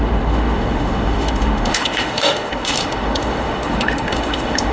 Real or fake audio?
fake